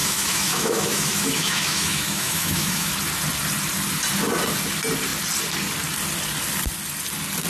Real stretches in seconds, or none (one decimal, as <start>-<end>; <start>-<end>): 2.9-7.5